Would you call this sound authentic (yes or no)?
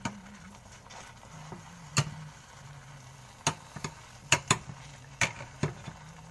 yes